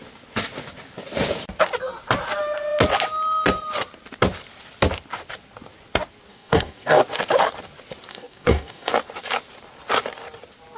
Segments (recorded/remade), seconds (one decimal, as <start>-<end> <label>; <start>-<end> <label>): 0.0-6.3 recorded; 6.3-7.0 remade; 7.0-8.1 recorded; 8.1-8.9 remade; 8.9-10.8 recorded